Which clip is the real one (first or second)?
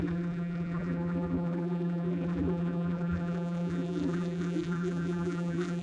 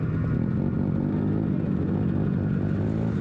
second